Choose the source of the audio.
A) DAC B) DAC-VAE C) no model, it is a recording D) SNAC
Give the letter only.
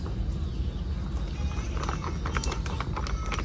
C